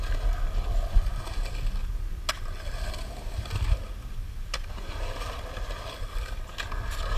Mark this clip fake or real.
real